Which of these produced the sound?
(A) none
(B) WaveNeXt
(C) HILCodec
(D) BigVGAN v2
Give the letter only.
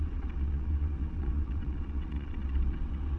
B